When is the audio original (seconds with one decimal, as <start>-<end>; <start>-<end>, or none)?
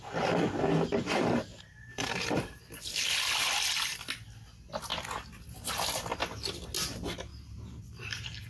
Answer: 0.0-0.9; 2.6-7.3